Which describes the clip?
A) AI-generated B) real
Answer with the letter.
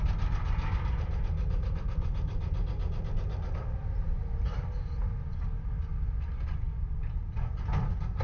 B